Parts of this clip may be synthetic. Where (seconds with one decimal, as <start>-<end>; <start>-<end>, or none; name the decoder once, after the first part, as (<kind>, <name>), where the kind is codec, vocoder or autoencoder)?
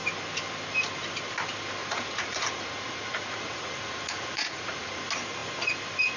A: 1.8-5.0 (vocoder, Vocos)